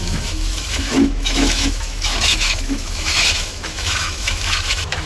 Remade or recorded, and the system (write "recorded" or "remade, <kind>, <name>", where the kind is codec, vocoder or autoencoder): remade, autoencoder, DAC-VAE